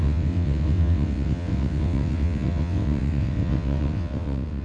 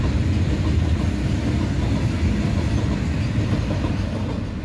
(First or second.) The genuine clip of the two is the second